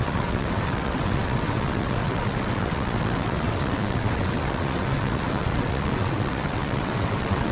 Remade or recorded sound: remade